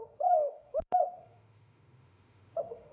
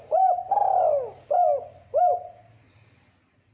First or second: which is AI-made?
first